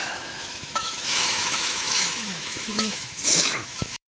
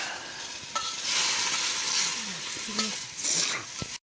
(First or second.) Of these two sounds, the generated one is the first